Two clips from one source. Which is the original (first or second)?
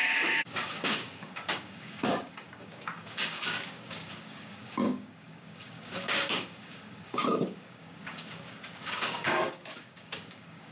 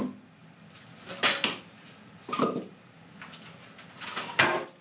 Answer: second